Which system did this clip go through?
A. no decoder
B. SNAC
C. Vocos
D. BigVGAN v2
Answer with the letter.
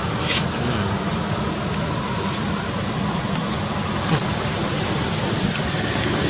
A